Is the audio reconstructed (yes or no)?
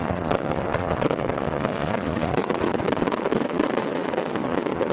yes